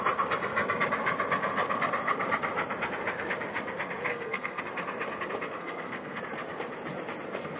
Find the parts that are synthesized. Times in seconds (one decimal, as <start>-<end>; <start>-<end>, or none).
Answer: 4.1-4.6; 5.6-6.2